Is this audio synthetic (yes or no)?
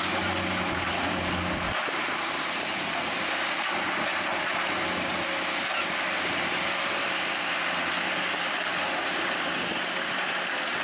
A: no